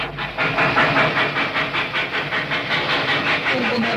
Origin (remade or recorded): recorded